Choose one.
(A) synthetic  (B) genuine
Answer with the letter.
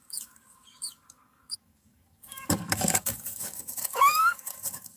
A